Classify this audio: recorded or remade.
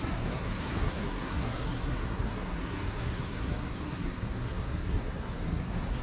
remade